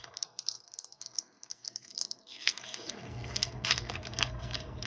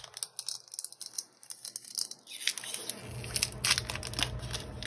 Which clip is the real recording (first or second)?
second